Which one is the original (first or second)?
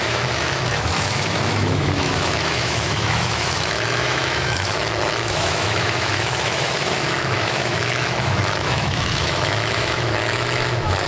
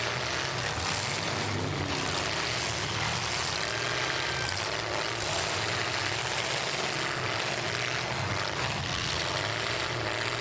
second